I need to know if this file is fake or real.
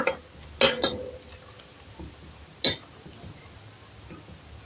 real